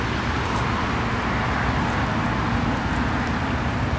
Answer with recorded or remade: recorded